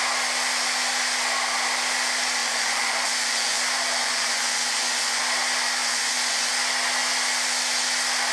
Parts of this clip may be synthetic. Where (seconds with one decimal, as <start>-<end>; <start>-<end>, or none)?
2.4-3.6; 4.0-5.2; 5.8-6.5